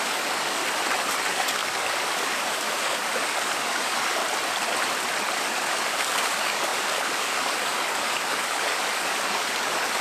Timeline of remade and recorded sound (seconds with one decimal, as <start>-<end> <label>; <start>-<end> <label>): 0.0-0.6 remade; 0.6-1.2 recorded; 1.2-4.2 remade; 4.2-5.4 recorded; 5.4-10.0 remade